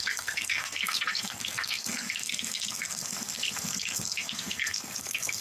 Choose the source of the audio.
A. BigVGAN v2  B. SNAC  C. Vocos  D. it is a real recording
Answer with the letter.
B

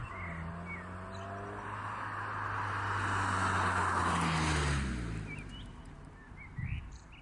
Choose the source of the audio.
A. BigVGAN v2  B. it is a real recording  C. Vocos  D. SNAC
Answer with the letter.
B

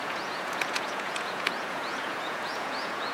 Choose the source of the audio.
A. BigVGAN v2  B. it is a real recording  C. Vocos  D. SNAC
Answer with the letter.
C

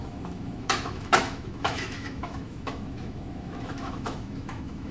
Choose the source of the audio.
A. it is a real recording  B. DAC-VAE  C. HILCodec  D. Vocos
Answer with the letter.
B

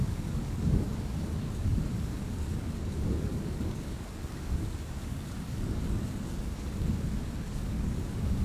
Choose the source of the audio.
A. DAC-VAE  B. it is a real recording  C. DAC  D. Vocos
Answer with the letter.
C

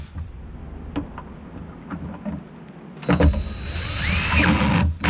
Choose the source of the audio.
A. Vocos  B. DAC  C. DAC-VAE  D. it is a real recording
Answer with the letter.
D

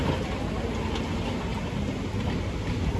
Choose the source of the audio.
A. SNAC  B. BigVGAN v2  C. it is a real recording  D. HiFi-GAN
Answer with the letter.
C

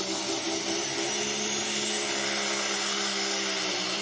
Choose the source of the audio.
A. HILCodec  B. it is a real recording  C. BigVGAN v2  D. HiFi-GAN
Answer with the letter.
B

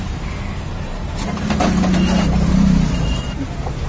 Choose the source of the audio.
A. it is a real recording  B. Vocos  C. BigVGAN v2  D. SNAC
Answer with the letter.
C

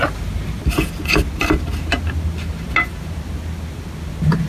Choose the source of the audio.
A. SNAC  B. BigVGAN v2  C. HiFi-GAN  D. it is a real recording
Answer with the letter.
D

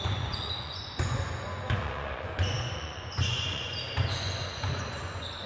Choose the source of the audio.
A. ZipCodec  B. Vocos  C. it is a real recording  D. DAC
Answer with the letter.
B